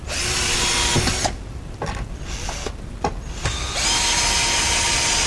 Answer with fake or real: real